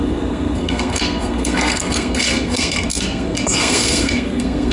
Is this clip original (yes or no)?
no